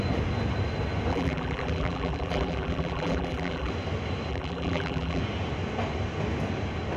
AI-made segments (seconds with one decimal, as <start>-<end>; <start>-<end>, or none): 1.1-3.7; 4.3-5.2